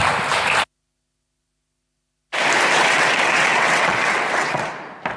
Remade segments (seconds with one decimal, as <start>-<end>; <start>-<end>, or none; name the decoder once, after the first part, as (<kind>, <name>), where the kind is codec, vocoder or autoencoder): 2.8-4.6 (vocoder, WaveNeXt)